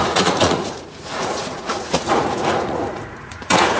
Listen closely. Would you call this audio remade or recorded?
remade